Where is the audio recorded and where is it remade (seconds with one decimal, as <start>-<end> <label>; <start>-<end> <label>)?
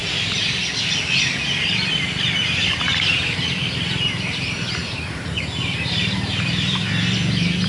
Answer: 0.0-0.6 remade; 0.6-2.9 recorded; 2.9-6.9 remade; 6.9-7.7 recorded